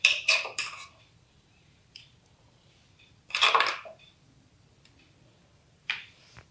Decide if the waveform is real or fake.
fake